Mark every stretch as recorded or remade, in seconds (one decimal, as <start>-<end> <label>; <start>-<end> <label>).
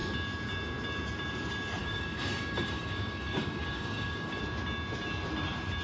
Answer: 0.0-1.8 recorded; 1.8-4.4 remade; 4.4-5.8 recorded